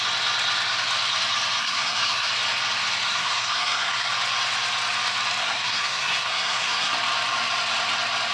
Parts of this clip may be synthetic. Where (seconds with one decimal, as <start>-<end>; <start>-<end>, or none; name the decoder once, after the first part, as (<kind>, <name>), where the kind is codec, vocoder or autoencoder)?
1.6-2.3 (codec, SNAC); 3.1-4.1; 5.4-6.9